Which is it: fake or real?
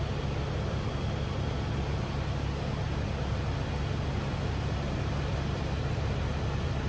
real